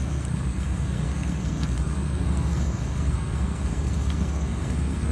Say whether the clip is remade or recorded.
remade